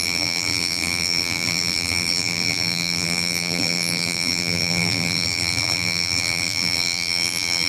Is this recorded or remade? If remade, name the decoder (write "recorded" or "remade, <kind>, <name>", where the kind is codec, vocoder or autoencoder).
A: remade, vocoder, BigVGAN v2